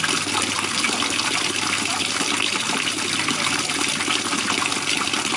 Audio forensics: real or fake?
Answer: real